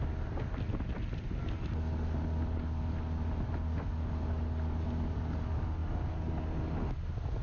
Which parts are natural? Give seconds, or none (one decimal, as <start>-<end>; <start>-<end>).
0.0-7.4